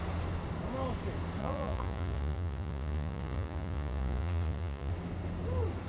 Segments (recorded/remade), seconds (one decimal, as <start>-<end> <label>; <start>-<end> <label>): 0.0-1.4 recorded; 1.4-4.9 remade; 4.9-5.9 recorded